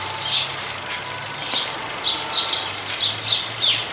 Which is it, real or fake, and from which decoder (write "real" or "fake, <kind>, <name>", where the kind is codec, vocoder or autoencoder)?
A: real